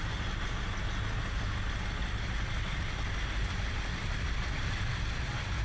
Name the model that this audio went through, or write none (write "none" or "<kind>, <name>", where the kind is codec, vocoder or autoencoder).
vocoder, BigVGAN v2